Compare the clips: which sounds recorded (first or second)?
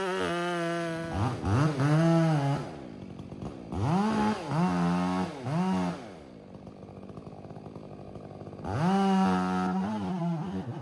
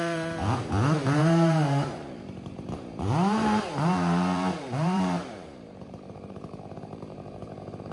first